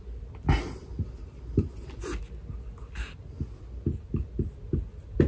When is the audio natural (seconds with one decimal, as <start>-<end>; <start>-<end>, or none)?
0.0-5.3